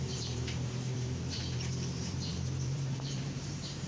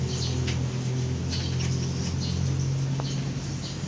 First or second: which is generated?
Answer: first